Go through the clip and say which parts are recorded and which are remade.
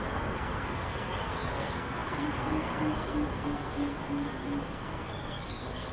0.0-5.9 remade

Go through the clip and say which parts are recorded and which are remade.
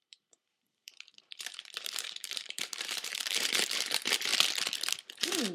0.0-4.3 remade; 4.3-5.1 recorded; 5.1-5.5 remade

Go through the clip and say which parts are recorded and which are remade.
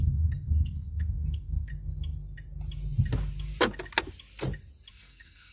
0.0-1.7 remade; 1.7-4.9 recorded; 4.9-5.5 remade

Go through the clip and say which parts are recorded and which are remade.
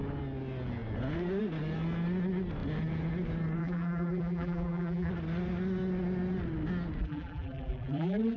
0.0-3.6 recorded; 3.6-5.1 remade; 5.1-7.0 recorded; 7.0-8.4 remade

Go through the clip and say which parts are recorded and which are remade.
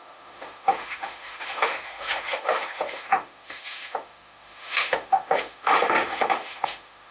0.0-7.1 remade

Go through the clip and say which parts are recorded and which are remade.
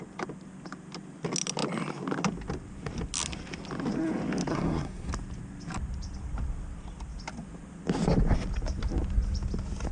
0.0-4.5 recorded; 4.5-5.1 remade; 5.1-9.9 recorded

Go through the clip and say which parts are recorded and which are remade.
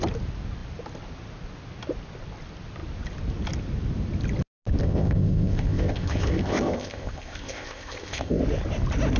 0.0-4.8 recorded; 4.8-8.4 remade; 8.4-9.2 recorded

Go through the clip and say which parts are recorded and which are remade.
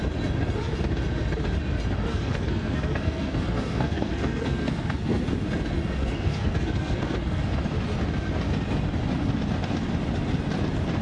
0.0-2.1 recorded; 2.1-5.3 remade; 5.3-6.0 recorded; 6.0-7.4 remade; 7.4-11.0 recorded